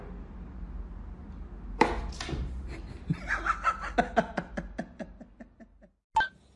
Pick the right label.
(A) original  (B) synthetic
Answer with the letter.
A